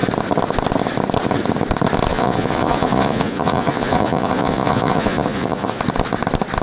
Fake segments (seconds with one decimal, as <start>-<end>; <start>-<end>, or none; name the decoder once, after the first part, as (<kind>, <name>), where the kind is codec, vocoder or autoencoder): 2.1-5.8 (vocoder, Vocos)